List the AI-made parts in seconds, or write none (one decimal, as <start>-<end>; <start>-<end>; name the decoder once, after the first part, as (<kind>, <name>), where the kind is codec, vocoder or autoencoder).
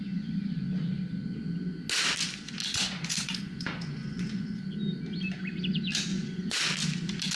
2.6-4.6 (vocoder, Vocos); 6.1-6.6